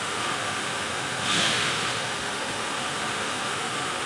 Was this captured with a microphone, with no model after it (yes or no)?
no